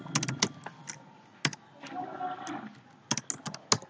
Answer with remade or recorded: recorded